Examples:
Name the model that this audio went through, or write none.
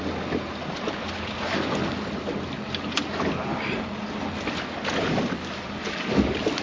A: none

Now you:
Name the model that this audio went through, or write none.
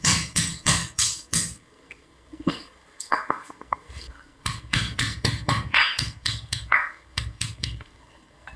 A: codec, SNAC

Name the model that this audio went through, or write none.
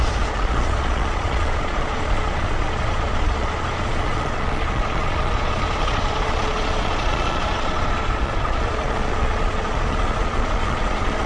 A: vocoder, Vocos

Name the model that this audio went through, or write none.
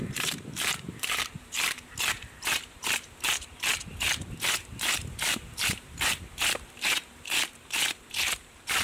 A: vocoder, BigVGAN v2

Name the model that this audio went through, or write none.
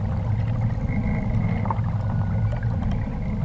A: none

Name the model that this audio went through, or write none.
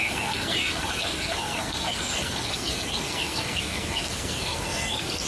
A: codec, SNAC